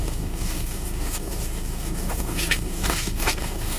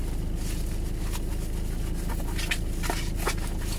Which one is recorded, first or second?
second